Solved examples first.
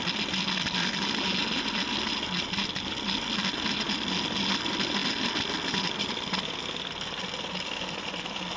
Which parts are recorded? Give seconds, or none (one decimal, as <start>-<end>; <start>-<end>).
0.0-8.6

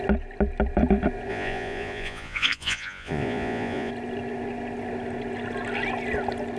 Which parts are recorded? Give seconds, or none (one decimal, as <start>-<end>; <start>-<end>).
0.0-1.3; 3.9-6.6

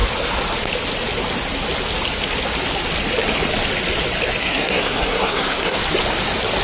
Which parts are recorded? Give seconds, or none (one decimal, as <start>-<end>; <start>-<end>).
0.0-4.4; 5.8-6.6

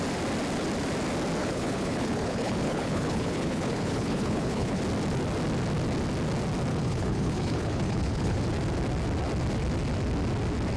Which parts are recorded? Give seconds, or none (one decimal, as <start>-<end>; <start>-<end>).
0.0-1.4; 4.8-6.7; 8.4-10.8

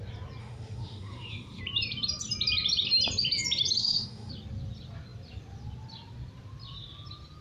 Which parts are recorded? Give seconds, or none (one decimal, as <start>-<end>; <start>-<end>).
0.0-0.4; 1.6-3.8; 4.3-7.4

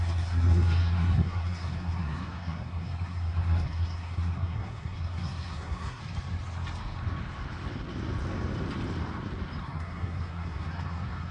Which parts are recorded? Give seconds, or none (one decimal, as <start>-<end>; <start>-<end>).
6.0-9.6